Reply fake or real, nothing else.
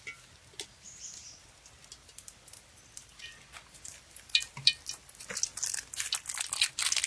real